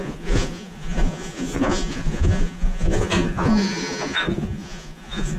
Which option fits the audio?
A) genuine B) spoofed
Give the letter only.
B